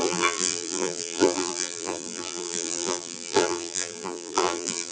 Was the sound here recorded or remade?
remade